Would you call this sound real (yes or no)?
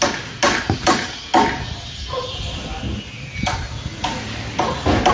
yes